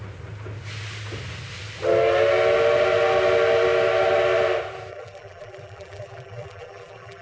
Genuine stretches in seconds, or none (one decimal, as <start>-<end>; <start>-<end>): 0.0-4.9